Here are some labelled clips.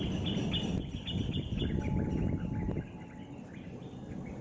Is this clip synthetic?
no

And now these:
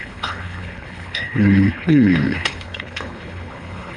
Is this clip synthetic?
yes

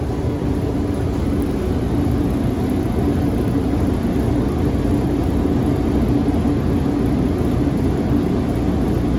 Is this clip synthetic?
no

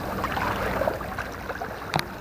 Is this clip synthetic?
no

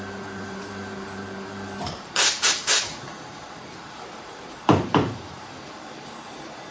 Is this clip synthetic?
yes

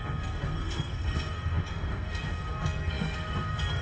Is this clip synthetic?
yes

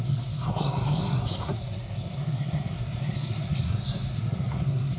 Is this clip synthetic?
yes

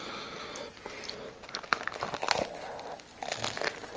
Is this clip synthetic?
no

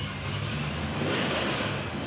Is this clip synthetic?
no